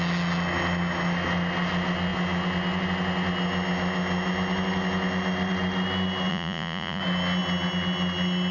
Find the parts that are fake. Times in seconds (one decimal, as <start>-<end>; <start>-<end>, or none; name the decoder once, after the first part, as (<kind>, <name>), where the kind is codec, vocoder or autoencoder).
6.3-7.0 (vocoder, Vocos)